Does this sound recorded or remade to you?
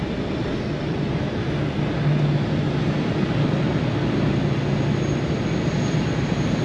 recorded